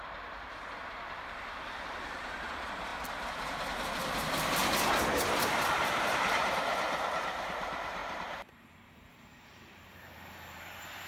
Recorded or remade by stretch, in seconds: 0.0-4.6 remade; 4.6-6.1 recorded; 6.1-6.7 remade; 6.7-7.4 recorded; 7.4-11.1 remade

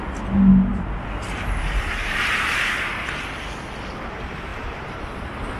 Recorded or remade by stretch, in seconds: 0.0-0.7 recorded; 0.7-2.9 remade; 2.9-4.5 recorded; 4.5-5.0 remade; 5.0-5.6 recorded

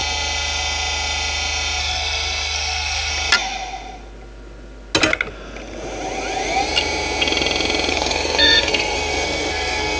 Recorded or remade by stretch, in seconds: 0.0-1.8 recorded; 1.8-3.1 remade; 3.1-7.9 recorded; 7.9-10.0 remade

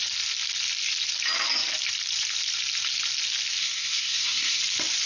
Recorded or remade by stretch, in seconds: 0.0-3.6 recorded; 3.6-4.6 remade; 4.6-5.1 recorded

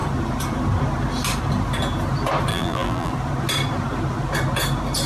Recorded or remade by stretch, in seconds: 0.0-2.5 recorded; 2.5-3.1 remade; 3.1-5.1 recorded

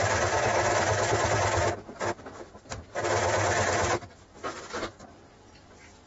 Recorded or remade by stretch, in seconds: 0.0-6.1 recorded

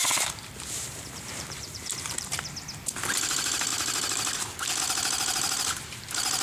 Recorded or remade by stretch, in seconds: 0.0-0.9 recorded; 0.9-2.3 remade; 2.3-3.2 recorded; 3.2-3.7 remade; 3.7-4.8 recorded; 4.8-6.4 remade

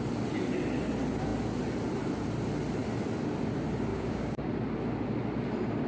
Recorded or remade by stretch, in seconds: 0.0-3.9 recorded; 3.9-4.5 remade; 4.5-5.9 recorded